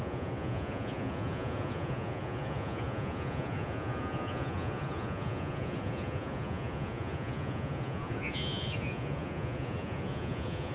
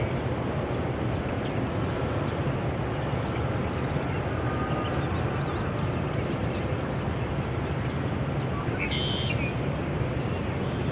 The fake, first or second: first